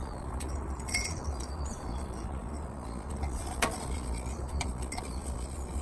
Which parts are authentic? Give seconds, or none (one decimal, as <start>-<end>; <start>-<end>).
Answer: none